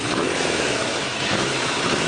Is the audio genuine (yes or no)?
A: no